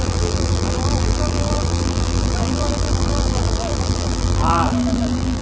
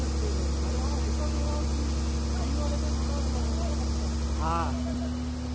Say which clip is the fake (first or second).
first